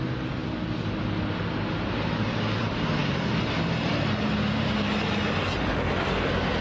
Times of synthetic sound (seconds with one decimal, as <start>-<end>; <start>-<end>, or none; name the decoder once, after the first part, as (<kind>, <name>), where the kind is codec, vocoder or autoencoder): none